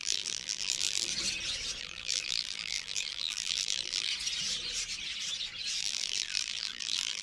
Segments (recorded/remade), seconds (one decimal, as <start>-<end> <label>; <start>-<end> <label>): 0.0-1.1 remade; 1.1-1.8 recorded; 1.8-4.1 remade; 4.1-5.8 recorded; 5.8-7.2 remade